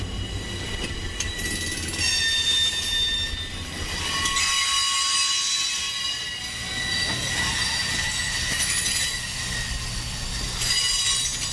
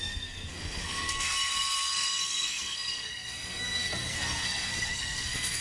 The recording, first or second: first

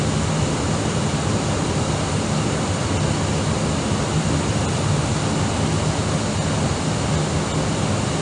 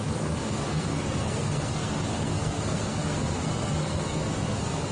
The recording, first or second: first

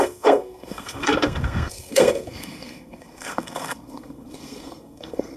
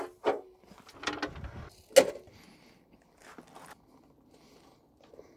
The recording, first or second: second